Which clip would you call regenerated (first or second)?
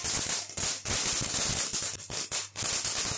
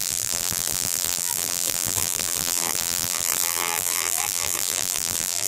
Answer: second